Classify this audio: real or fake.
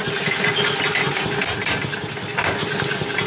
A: real